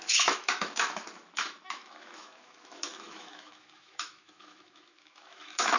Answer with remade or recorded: remade